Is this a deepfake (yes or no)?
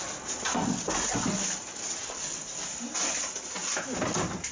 no